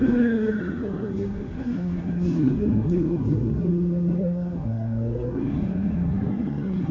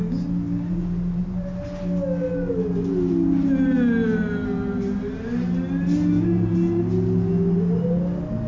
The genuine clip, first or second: second